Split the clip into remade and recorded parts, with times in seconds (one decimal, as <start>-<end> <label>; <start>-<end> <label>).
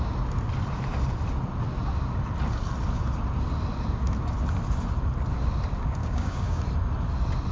0.0-6.0 recorded; 6.0-6.6 remade; 6.6-7.5 recorded